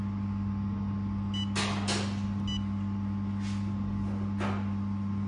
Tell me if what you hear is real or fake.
real